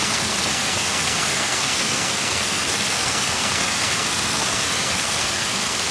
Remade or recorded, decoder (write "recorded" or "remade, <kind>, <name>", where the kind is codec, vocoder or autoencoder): remade, codec, SNAC